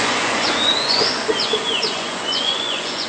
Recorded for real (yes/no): no